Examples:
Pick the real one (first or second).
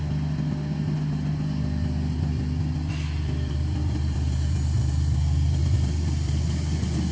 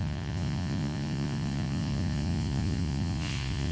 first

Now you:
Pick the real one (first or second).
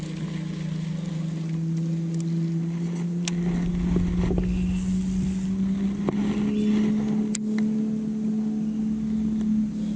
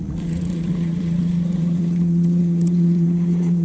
first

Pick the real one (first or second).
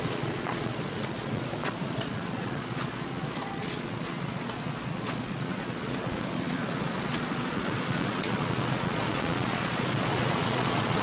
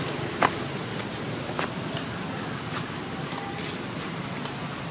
second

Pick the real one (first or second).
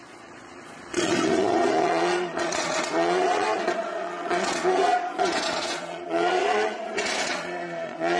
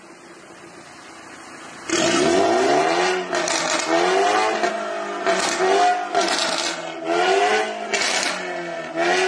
second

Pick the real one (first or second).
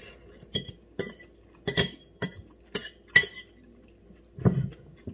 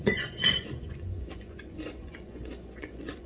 first